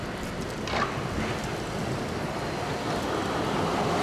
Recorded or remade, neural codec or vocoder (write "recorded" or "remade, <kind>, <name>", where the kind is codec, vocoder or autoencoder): recorded